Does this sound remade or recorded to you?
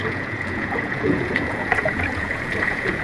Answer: remade